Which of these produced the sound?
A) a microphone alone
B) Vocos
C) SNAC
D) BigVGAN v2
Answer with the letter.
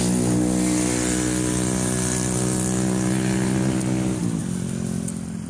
A